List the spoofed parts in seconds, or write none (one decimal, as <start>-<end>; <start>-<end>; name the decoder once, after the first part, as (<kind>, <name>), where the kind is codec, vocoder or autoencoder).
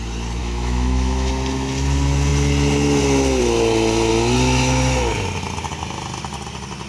0.4-1.3 (autoencoder, DAC-VAE)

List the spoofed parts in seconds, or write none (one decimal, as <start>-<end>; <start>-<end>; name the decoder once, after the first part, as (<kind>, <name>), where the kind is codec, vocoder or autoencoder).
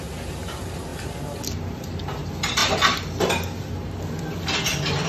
none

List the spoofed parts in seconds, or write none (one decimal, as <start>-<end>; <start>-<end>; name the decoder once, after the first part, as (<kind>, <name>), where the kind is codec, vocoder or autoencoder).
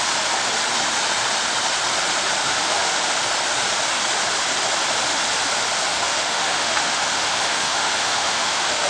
2.5-3.1 (autoencoder, DAC-VAE); 5.9-8.9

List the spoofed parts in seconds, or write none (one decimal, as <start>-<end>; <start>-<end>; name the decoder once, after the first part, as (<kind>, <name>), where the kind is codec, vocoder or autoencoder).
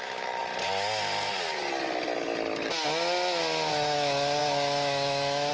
0.0-0.4 (autoencoder, DAC-VAE); 3.7-5.5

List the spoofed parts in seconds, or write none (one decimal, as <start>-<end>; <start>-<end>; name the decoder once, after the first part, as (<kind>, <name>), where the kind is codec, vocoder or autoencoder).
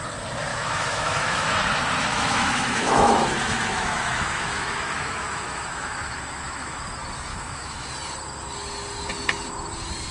0.5-1.6 (autoencoder, DAC-VAE); 2.1-6.8; 7.3-7.9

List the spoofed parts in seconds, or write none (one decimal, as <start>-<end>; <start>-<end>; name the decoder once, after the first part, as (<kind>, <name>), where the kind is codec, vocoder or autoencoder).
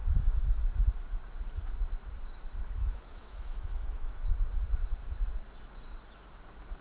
2.8-4.3 (autoencoder, DAC-VAE)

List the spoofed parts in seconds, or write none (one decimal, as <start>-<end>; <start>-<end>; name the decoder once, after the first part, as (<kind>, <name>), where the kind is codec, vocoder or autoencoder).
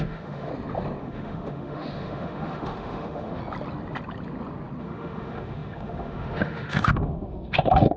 0.0-0.5 (autoencoder, DAC-VAE); 1.0-3.4; 4.8-8.0